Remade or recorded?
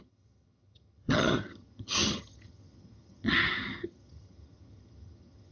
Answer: remade